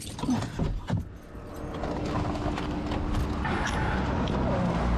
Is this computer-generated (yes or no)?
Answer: no